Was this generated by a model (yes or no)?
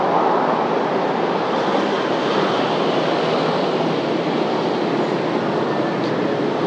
no